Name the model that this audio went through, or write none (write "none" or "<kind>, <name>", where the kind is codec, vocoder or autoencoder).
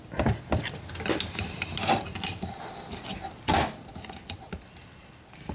none